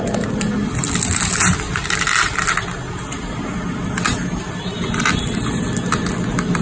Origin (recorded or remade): recorded